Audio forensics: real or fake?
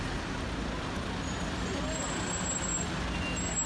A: real